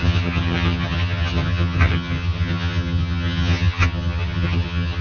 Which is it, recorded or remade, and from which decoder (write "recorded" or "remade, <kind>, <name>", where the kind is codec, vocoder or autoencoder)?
remade, vocoder, HiFi-GAN